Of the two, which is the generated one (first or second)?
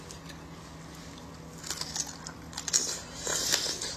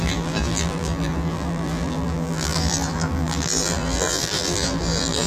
second